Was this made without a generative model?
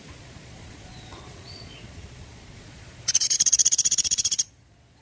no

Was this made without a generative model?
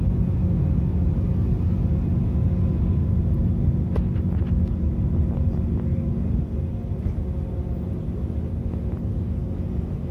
yes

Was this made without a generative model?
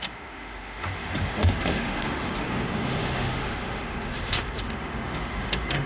no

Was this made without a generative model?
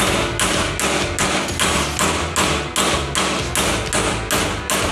yes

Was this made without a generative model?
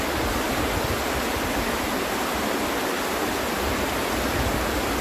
yes